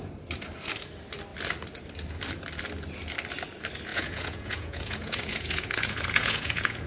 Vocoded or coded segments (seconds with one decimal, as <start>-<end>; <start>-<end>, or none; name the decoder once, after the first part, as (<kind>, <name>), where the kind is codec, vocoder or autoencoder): 3.9-6.9 (vocoder, Vocos)